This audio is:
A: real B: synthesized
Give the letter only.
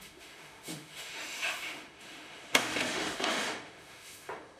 B